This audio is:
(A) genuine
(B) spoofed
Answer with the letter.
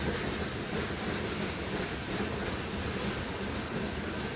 A